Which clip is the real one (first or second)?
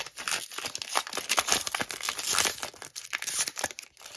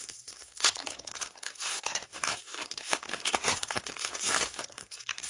first